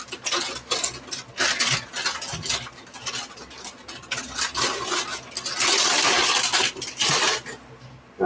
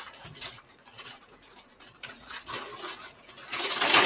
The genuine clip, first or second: first